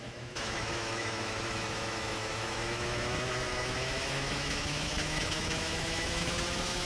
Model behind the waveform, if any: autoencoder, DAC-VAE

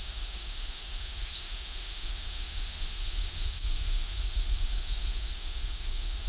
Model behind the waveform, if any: autoencoder, DAC-VAE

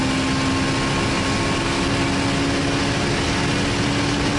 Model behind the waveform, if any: none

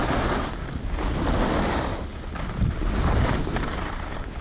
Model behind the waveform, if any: none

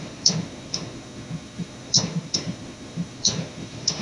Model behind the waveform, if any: autoencoder, DAC-VAE